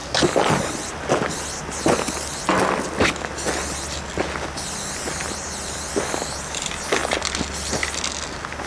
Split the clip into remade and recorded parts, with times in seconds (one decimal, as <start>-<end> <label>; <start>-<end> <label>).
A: 0.0-8.7 recorded